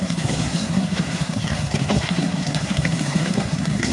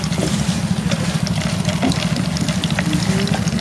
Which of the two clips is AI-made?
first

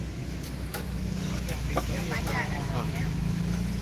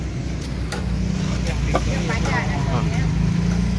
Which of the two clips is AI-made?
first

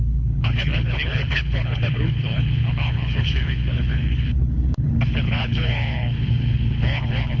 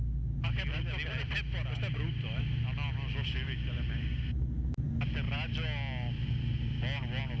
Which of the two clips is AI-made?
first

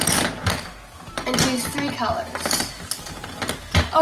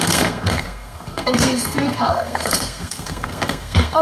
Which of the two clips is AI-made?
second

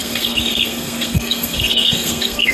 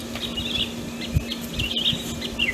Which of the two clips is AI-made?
first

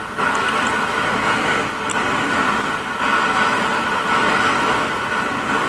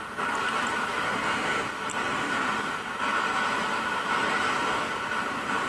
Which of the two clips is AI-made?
second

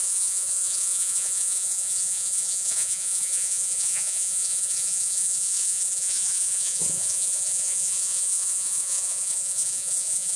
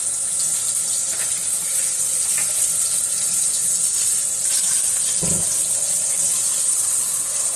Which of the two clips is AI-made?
first